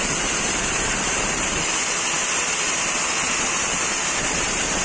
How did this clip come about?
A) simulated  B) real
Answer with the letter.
A